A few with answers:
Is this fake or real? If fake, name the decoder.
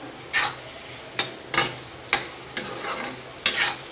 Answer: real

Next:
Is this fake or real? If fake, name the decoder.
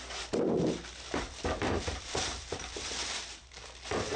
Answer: fake, vocoder, BigVGAN v2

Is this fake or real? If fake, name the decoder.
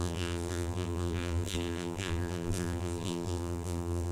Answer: fake, vocoder, BigVGAN v2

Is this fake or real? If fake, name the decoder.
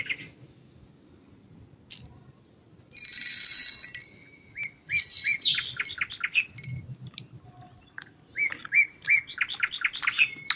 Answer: real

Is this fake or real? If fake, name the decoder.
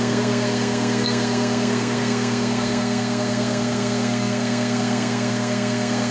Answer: fake, codec, SNAC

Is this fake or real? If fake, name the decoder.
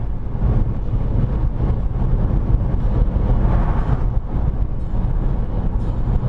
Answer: real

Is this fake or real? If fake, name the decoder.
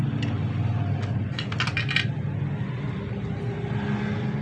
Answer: real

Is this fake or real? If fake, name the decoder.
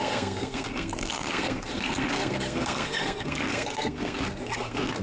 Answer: fake, codec, SNAC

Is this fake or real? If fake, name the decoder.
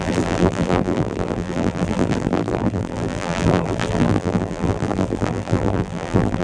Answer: fake, vocoder, BigVGAN v2